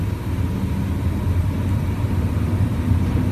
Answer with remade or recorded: recorded